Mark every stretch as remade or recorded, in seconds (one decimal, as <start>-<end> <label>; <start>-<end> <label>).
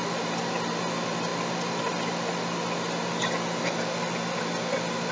0.0-5.1 recorded